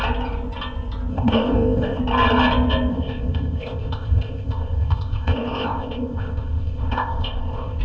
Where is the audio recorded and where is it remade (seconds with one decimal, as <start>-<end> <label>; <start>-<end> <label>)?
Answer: 0.0-1.1 recorded; 1.1-2.0 remade; 2.0-2.9 recorded; 2.9-7.8 remade